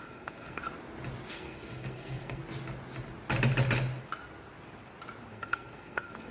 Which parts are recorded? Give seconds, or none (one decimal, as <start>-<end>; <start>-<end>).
0.6-1.3; 2.4-5.3